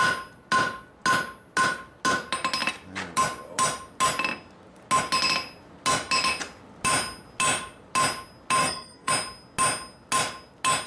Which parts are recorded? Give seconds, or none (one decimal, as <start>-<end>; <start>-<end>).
0.0-8.6; 9.1-10.9